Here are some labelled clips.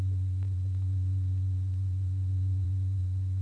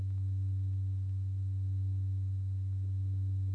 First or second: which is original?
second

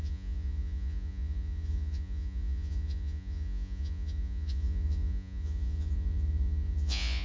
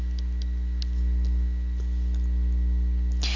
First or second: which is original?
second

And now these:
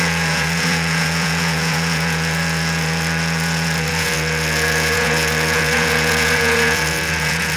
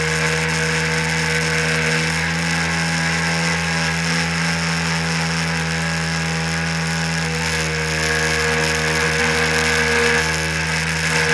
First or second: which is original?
second